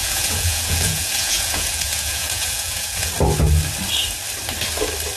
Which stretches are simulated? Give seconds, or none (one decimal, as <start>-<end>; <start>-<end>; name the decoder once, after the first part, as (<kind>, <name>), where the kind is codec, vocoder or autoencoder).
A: 0.0-3.1 (vocoder, Vocos)